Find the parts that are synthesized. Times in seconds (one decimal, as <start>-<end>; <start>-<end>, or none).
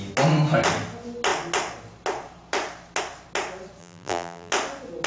3.8-4.5